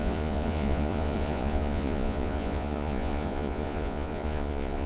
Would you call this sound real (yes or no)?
no